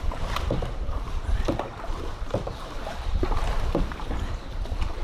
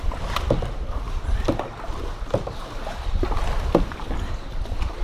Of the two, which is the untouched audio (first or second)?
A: second